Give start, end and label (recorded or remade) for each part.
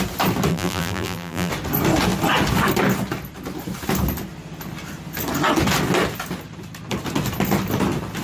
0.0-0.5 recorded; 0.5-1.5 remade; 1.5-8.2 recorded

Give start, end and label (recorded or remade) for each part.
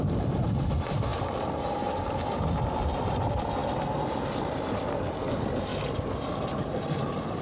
0.0-1.1 remade; 1.1-2.6 recorded; 2.6-5.7 remade; 5.7-7.0 recorded; 7.0-7.4 remade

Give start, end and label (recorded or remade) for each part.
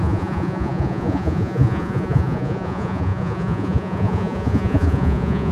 0.0-5.5 remade